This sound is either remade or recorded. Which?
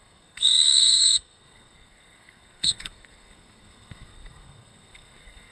remade